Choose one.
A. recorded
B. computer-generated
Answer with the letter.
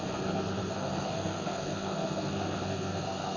B